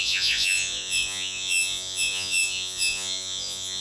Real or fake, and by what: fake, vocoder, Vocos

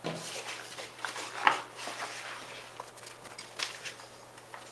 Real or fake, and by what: real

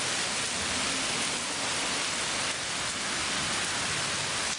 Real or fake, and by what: real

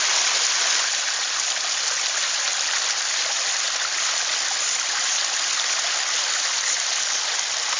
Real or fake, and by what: real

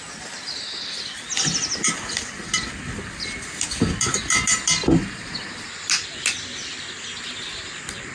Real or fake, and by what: real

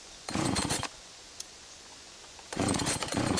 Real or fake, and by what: fake, vocoder, Vocos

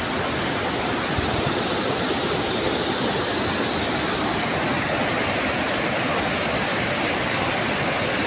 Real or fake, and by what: real